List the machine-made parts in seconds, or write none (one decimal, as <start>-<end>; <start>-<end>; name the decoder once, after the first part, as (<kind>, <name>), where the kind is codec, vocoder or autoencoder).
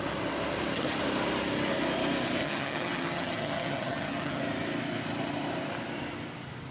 2.4-4.4 (vocoder, HiFi-GAN)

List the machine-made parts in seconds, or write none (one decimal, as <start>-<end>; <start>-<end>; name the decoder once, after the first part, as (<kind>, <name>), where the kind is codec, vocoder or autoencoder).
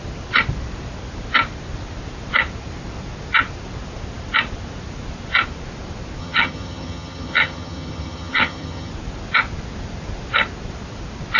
6.2-8.9 (vocoder, HiFi-GAN)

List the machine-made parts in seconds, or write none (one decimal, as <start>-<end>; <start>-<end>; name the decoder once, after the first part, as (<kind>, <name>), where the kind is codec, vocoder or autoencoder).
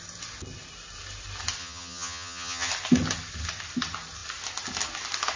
1.6-2.7 (vocoder, HiFi-GAN)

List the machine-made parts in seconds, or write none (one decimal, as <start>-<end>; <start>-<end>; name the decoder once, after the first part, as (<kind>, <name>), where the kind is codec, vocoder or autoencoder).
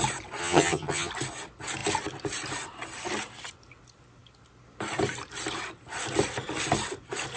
0.4-1.1 (vocoder, HiFi-GAN)